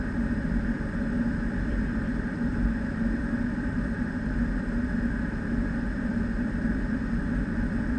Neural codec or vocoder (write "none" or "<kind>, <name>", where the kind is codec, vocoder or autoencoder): vocoder, BigVGAN v2